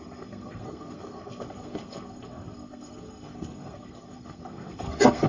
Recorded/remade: remade